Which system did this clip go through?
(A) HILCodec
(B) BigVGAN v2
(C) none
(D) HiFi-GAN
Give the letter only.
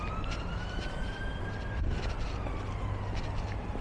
C